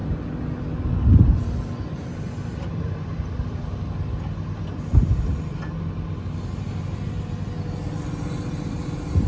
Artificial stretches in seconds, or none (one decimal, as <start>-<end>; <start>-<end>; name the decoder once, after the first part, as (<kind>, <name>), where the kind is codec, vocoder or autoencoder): none